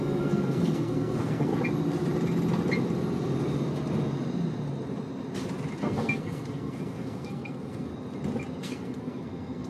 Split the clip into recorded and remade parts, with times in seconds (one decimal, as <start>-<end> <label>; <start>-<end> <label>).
0.0-1.5 remade; 1.5-5.8 recorded; 5.8-7.9 remade; 7.9-8.6 recorded; 8.6-9.7 remade